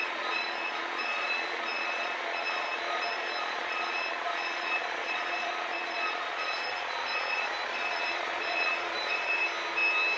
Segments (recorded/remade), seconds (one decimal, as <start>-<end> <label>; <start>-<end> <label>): 0.0-9.4 remade; 9.4-10.2 recorded